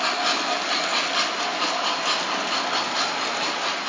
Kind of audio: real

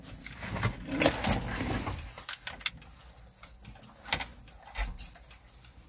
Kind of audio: real